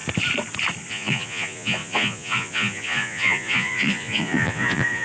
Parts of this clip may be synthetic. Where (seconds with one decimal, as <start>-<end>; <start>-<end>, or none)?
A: 0.9-5.0